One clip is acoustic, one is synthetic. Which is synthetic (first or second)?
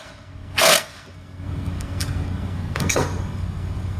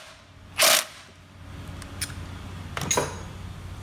first